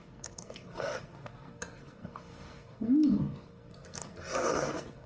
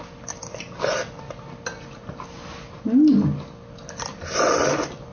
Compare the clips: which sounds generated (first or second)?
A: first